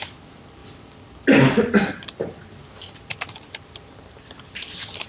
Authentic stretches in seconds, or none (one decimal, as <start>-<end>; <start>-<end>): 0.0-5.1